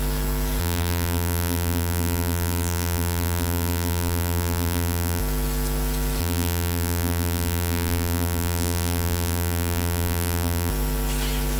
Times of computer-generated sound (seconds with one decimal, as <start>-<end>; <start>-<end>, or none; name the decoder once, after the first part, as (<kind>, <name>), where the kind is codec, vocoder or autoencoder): 0.6-5.2 (vocoder, BigVGAN v2); 6.2-10.7